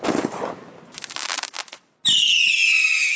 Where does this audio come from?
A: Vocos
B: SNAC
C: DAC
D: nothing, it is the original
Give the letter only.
D